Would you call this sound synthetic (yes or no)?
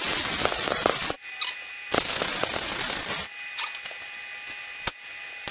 no